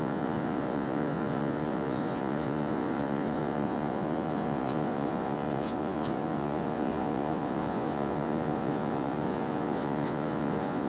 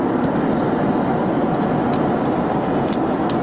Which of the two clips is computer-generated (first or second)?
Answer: first